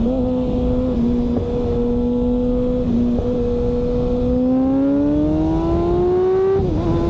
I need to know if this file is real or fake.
real